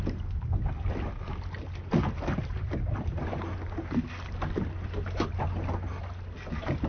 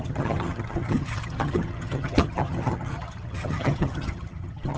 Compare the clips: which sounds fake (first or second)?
second